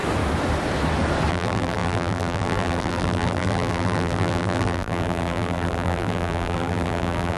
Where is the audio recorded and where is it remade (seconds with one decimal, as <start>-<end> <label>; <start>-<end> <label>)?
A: 0.0-1.3 recorded; 1.3-7.4 remade